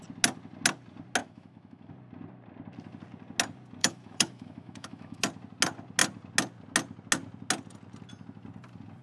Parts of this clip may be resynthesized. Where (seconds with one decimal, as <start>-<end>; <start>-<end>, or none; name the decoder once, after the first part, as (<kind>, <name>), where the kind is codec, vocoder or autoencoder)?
1.2-1.9 (autoencoder, DAC-VAE); 3.8-5.2